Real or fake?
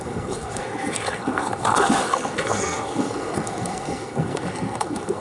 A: fake